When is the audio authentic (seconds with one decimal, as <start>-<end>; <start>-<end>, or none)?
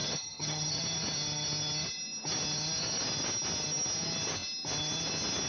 0.8-5.5